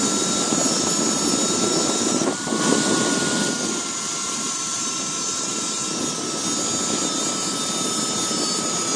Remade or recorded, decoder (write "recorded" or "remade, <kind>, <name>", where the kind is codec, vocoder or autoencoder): recorded